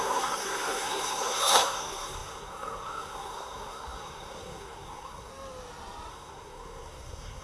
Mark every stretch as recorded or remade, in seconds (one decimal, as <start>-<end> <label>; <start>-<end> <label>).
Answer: 0.0-5.3 remade; 5.3-6.1 recorded; 6.1-7.4 remade